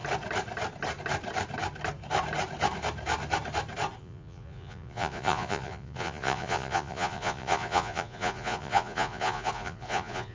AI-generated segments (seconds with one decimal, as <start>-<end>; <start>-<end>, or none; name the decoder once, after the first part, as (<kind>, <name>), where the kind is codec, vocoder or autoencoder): 4.0-10.3 (vocoder, Vocos)